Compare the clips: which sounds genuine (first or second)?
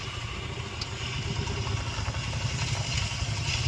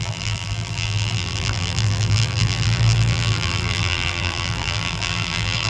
first